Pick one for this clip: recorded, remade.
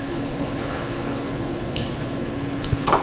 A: remade